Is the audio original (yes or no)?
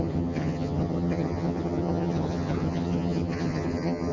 no